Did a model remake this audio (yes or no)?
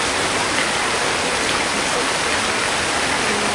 no